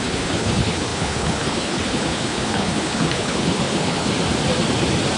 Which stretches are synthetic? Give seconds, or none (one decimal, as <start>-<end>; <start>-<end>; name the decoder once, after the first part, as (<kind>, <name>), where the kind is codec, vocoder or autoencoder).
0.0-4.1 (codec, HILCodec)